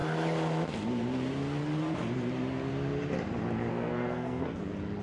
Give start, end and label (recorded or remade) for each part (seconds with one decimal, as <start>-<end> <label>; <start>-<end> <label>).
0.0-3.7 recorded; 3.7-4.6 remade; 4.6-5.0 recorded